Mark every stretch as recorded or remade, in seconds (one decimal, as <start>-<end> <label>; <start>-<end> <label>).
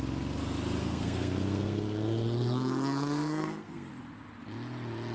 0.0-0.8 recorded; 0.8-3.9 remade; 3.9-5.1 recorded